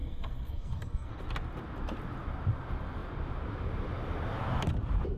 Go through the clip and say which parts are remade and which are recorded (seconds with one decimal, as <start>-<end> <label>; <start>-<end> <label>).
0.0-1.1 remade; 1.1-5.2 recorded